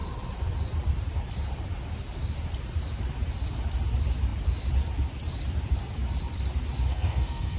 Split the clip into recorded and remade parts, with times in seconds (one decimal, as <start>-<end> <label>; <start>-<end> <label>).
0.0-6.9 recorded; 6.9-7.6 remade

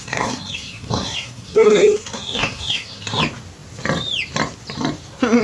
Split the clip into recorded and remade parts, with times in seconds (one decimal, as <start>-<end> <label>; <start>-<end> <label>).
0.0-3.2 remade; 3.2-5.4 recorded